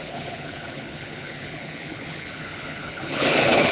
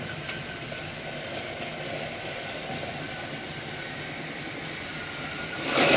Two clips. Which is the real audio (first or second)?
second